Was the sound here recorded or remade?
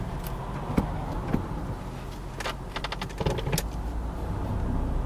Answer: recorded